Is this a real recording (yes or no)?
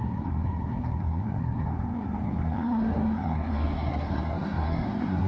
no